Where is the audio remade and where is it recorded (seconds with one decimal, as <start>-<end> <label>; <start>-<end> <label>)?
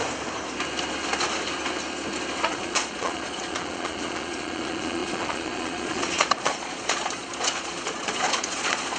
0.0-2.5 recorded; 2.5-9.0 remade